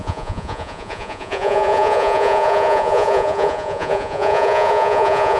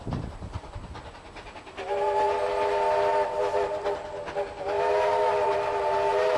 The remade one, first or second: first